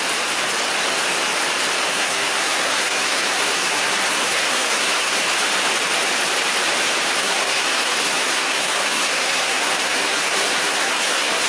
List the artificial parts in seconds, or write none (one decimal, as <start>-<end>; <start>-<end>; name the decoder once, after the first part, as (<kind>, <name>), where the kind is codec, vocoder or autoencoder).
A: 1.9-5.2 (codec, SNAC); 7.2-11.5